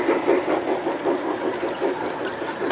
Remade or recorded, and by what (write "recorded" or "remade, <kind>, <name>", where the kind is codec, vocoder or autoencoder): recorded